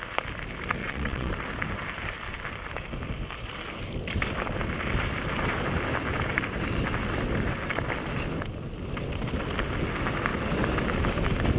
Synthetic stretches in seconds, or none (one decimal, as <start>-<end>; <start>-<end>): 0.8-1.3